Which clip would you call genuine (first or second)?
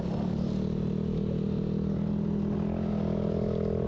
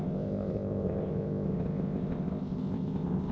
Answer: first